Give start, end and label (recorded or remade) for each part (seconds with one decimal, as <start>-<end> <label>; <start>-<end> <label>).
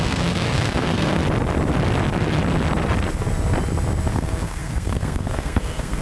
0.0-1.2 remade; 1.2-4.1 recorded; 4.1-6.0 remade